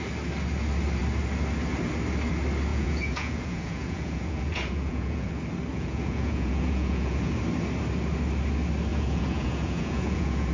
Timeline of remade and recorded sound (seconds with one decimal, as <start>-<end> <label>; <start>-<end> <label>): 0.0-2.7 recorded; 2.7-5.3 remade; 5.3-5.7 recorded; 5.7-7.4 remade; 7.4-8.9 recorded; 8.9-10.5 remade